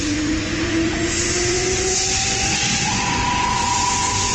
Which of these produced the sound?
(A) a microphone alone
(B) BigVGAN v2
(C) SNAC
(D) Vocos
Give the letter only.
D